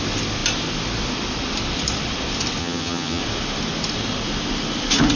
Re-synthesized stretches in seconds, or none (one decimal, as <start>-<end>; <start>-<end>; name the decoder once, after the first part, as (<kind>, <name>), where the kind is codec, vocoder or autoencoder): 2.6-3.2 (vocoder, HiFi-GAN)